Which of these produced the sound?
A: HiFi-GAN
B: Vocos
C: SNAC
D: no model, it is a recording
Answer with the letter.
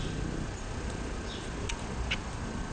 D